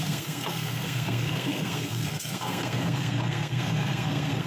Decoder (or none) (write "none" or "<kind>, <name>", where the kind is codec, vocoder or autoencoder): codec, SNAC